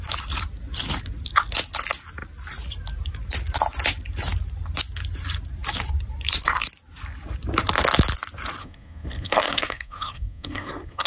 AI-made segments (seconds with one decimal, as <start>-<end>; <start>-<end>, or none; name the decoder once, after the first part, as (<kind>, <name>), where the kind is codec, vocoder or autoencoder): 8.6-11.1 (codec, SNAC)